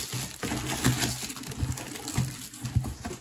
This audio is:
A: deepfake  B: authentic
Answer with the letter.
B